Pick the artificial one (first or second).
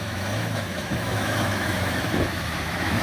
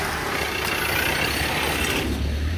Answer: first